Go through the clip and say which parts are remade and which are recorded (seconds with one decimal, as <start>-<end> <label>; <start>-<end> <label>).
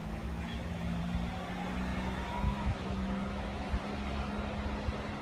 0.0-1.0 remade; 1.0-1.9 recorded; 1.9-3.7 remade; 3.7-5.2 recorded